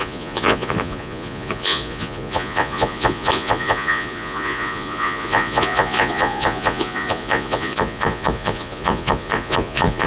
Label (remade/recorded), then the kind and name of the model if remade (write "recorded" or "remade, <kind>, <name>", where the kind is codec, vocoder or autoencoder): remade, vocoder, Vocos